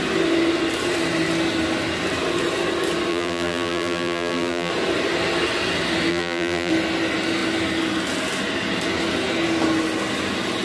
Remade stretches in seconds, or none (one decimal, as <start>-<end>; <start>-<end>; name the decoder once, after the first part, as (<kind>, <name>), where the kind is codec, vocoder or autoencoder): 3.1-4.7 (vocoder, BigVGAN v2); 6.1-6.7